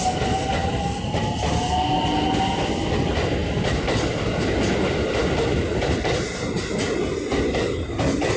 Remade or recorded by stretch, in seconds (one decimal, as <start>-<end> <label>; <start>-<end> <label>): 0.0-8.4 recorded